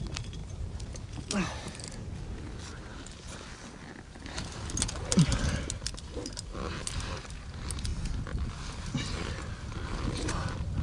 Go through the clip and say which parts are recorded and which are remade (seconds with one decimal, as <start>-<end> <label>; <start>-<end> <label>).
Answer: 0.0-0.4 recorded; 0.4-2.1 remade; 2.1-10.8 recorded